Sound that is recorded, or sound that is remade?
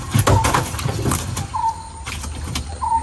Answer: recorded